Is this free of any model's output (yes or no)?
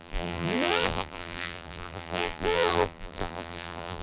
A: no